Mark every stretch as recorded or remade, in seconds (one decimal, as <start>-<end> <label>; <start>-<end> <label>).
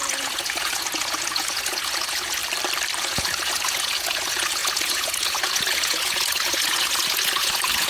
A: 0.0-2.4 remade; 2.4-3.0 recorded; 3.0-7.9 remade